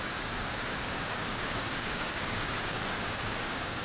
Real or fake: fake